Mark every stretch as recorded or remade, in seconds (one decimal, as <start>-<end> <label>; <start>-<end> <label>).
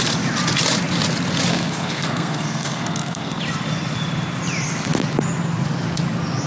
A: 0.0-1.5 recorded; 1.5-3.4 remade; 3.4-6.5 recorded